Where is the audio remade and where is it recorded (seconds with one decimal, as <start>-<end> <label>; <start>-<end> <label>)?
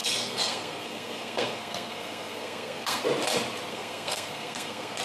0.0-3.0 remade; 3.0-3.7 recorded; 3.7-5.0 remade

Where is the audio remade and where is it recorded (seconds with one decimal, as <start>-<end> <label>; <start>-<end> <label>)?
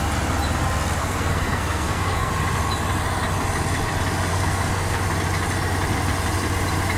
0.0-1.0 recorded; 1.0-2.3 remade; 2.3-4.3 recorded; 4.3-5.0 remade; 5.0-7.0 recorded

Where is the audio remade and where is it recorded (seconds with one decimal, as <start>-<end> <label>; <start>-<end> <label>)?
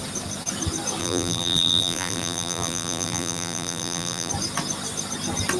0.0-1.0 recorded; 1.0-4.3 remade; 4.3-5.6 recorded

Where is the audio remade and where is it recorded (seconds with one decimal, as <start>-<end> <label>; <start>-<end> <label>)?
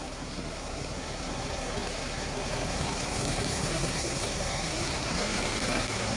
0.0-6.2 remade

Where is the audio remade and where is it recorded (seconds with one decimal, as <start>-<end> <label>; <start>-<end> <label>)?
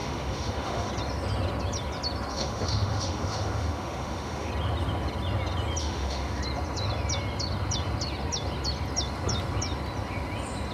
0.0-0.9 remade; 0.9-2.3 recorded; 2.3-4.5 remade; 4.5-5.8 recorded; 5.8-6.4 remade; 6.4-10.7 recorded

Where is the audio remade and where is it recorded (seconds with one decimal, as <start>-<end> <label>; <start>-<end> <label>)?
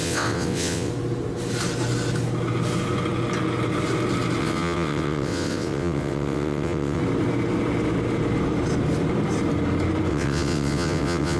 0.0-0.9 remade; 0.9-4.4 recorded; 4.4-7.0 remade; 7.0-10.1 recorded; 10.1-11.4 remade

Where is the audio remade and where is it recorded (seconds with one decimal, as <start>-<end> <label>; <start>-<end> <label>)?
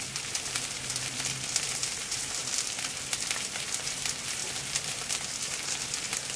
0.0-2.4 remade; 2.4-3.2 recorded; 3.2-6.4 remade